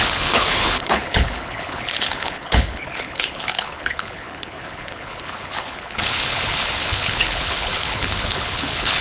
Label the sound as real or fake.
fake